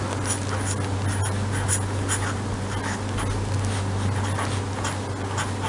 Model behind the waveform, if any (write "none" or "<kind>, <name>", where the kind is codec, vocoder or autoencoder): none